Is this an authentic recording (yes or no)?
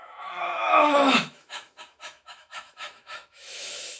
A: no